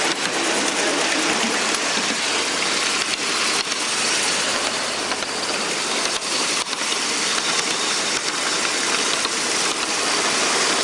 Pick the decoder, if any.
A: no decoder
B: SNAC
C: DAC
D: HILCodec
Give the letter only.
A